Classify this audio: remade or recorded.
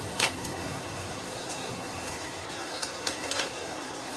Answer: remade